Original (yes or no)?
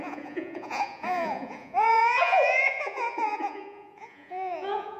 no